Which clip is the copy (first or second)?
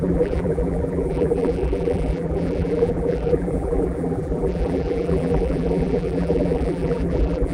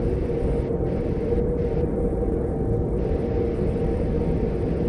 first